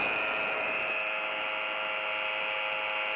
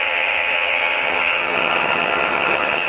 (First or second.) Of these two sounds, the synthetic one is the second